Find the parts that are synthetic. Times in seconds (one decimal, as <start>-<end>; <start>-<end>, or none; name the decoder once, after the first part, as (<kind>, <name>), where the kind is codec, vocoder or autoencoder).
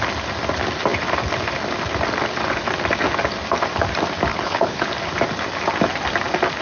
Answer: 4.3-4.9 (codec, HILCodec)